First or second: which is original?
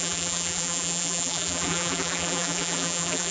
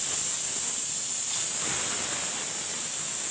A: second